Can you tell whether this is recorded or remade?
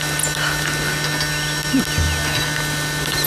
recorded